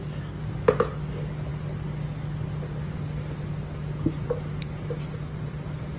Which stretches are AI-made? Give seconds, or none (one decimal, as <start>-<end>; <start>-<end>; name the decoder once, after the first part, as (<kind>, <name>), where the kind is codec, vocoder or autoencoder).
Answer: none